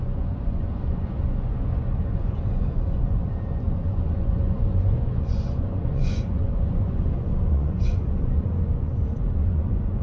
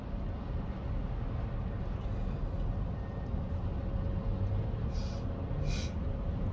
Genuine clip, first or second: second